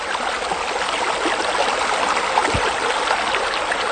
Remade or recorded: recorded